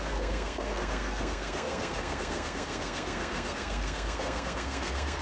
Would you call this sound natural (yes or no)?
no